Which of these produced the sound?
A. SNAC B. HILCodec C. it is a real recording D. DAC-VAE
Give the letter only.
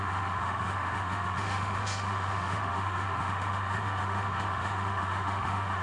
D